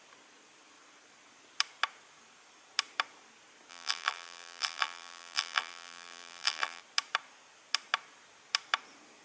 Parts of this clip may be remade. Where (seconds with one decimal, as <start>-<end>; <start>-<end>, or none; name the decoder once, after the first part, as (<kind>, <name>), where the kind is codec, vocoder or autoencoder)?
3.7-6.8 (vocoder, BigVGAN v2)